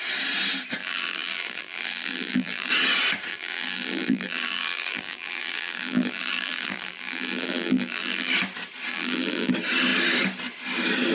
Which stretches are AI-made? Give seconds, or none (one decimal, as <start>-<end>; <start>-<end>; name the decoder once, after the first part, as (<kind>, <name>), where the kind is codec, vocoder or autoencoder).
0.8-2.7 (vocoder, BigVGAN v2); 3.3-8.3; 8.9-9.5